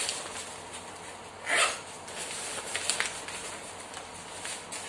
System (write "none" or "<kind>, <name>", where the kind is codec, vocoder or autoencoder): none